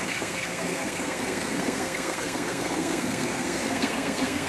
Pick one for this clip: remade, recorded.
remade